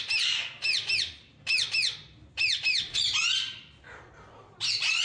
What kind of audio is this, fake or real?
real